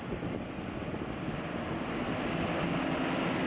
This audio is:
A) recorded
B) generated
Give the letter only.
A